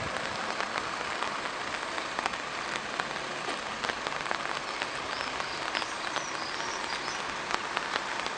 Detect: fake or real real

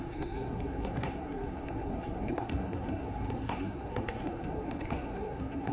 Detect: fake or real fake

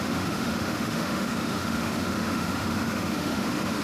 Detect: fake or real fake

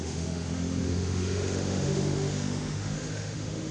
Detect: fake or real fake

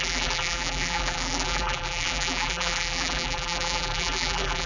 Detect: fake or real fake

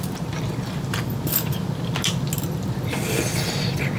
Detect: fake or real real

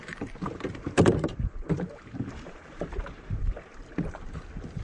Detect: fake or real fake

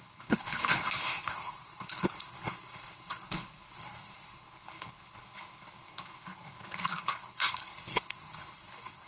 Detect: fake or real fake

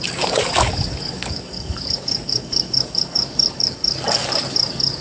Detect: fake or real fake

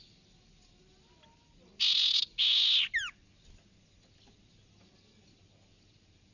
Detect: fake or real real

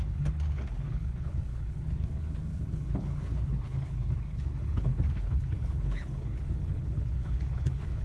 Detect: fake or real fake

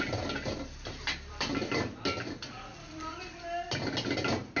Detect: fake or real real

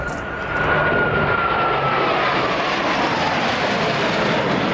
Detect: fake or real real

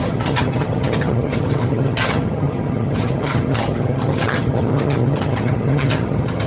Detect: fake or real fake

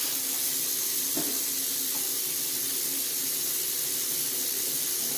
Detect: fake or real real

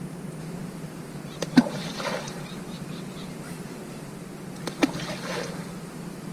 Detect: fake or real real